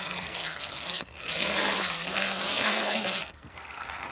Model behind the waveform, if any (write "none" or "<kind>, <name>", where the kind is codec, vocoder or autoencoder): codec, SNAC